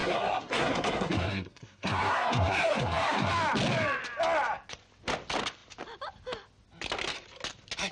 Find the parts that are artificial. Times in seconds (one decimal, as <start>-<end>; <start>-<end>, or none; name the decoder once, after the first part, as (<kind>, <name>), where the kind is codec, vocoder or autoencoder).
0.0-3.3 (codec, SNAC)